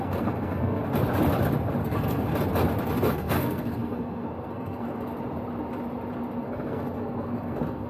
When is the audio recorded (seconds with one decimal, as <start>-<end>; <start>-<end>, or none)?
0.8-1.8; 2.3-3.1; 5.1-6.4